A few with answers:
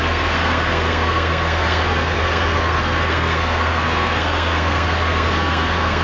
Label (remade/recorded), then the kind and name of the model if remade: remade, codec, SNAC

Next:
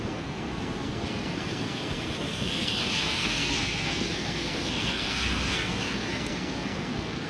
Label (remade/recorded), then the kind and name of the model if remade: remade, codec, SNAC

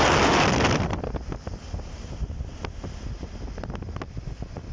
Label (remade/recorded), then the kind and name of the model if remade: recorded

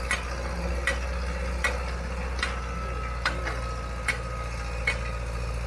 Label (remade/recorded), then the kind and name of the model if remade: recorded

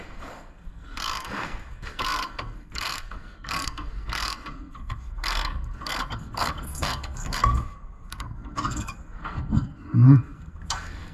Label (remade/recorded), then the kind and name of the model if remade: remade, codec, SNAC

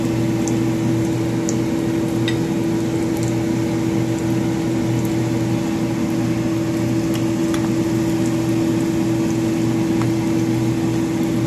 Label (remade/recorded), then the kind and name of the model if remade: recorded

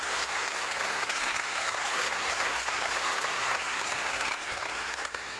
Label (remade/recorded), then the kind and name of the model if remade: remade, codec, SNAC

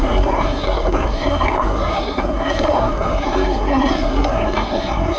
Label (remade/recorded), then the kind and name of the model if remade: remade, codec, SNAC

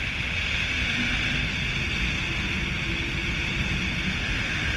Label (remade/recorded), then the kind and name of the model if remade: recorded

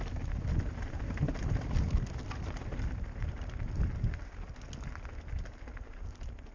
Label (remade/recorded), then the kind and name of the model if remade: recorded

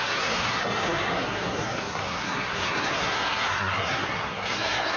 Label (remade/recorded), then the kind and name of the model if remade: remade, codec, SNAC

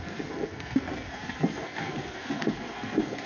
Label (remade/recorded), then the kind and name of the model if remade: remade, codec, SNAC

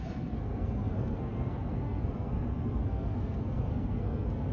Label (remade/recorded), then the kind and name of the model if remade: remade, codec, SNAC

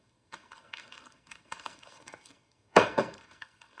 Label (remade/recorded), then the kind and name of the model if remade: remade, codec, SNAC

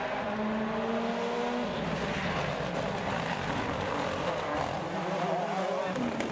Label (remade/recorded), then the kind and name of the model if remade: recorded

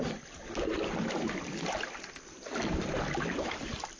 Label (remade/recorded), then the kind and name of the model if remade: recorded